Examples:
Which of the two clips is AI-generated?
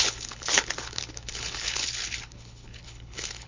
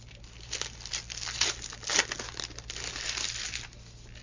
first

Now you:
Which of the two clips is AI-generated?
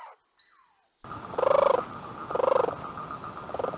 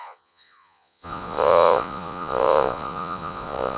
second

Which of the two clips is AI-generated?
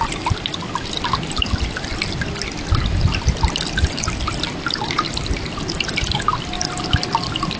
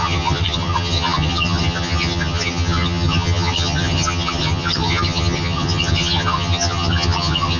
second